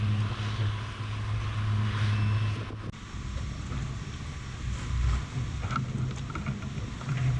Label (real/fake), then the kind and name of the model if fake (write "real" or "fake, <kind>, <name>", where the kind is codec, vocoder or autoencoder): real